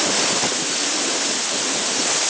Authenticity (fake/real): real